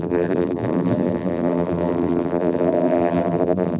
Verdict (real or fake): fake